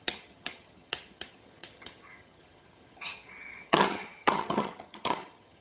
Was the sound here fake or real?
fake